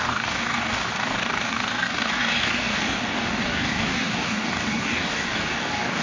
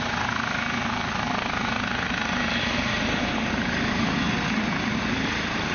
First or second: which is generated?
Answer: first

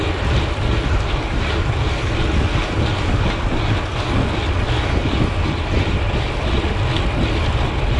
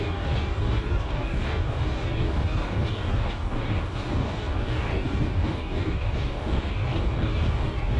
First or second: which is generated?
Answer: second